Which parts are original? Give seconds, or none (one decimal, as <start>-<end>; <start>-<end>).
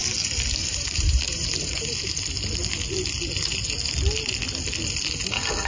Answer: 0.0-0.6; 2.0-5.7